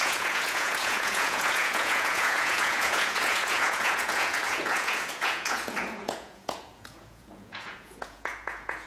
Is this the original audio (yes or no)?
no